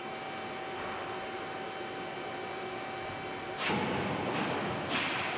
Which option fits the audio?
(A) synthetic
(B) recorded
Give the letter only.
B